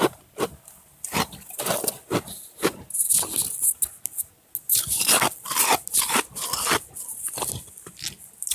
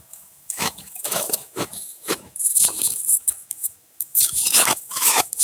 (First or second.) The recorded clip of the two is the first